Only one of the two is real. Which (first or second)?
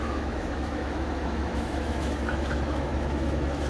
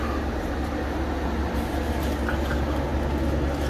second